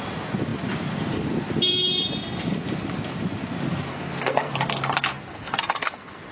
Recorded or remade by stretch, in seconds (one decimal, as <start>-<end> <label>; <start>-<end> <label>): 0.0-3.9 recorded; 3.9-4.5 remade; 4.5-5.1 recorded; 5.1-6.3 remade